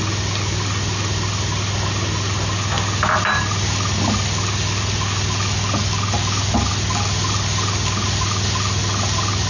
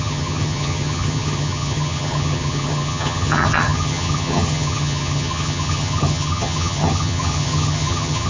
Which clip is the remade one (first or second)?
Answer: second